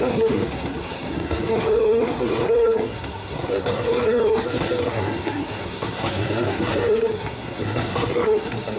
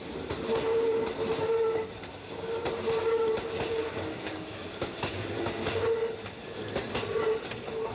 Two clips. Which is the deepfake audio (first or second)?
first